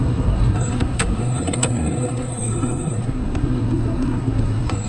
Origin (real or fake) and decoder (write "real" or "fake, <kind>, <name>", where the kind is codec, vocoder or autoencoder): fake, codec, SNAC